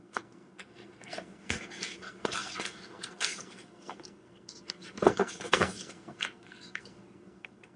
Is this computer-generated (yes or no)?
yes